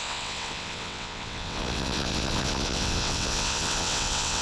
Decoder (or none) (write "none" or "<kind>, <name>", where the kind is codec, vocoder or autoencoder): vocoder, WaveNeXt